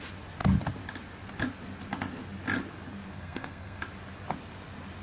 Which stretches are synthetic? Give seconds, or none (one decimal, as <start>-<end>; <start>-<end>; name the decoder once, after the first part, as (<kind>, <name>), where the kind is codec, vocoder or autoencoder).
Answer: 3.1-3.8 (codec, SNAC)